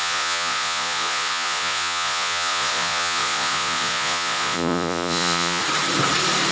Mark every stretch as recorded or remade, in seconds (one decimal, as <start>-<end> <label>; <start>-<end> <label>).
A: 0.0-5.6 remade; 5.6-6.5 recorded